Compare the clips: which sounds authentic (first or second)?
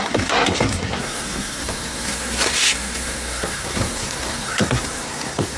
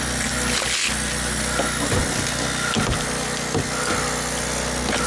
second